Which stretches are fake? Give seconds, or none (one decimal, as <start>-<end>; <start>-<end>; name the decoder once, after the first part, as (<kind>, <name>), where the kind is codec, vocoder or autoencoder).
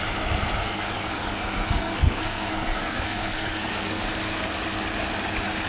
0.6-4.0 (codec, SNAC)